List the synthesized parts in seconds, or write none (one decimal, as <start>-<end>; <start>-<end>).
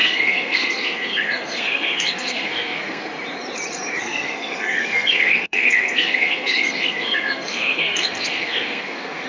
0.0-3.1; 4.0-9.3